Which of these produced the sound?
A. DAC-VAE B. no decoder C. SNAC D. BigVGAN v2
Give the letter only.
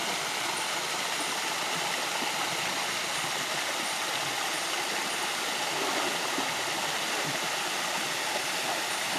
B